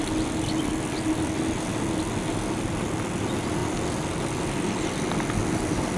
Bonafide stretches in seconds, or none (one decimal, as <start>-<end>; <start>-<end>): 0.0-6.0